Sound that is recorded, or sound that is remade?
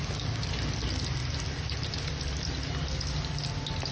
recorded